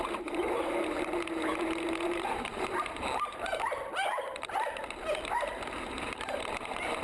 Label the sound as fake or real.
fake